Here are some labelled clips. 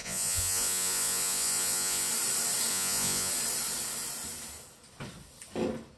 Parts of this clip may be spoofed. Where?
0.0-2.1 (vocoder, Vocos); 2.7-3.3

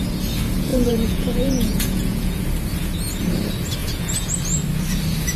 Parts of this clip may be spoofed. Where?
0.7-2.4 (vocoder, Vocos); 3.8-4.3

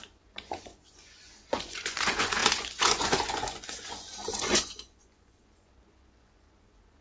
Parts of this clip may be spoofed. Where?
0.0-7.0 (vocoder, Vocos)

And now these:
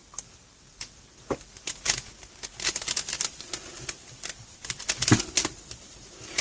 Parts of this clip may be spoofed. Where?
none